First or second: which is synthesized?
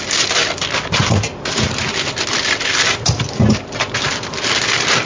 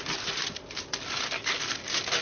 first